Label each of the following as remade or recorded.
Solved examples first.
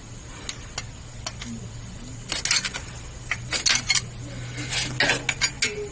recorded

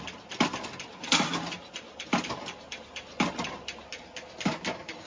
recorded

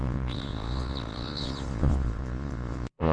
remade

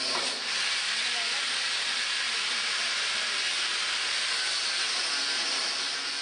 recorded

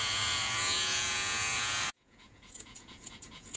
remade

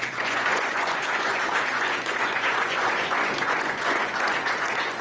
remade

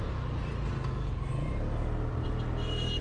recorded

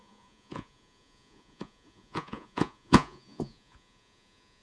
remade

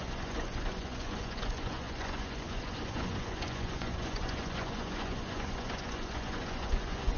remade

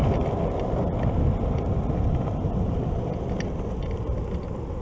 recorded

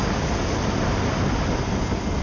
recorded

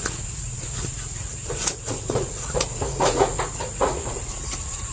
remade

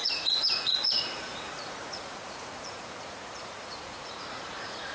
remade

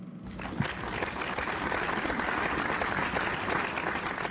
recorded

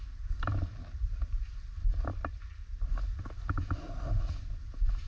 recorded